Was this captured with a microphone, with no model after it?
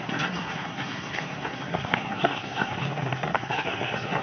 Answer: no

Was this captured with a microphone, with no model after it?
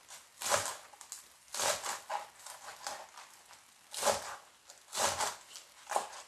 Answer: yes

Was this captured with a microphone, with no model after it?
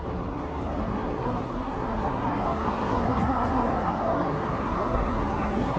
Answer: no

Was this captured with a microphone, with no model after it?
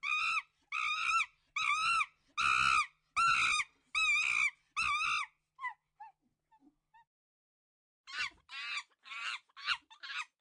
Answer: yes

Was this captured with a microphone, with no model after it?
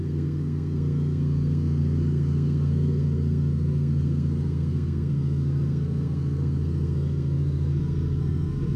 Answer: no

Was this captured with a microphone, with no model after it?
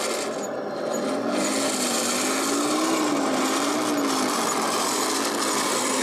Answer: yes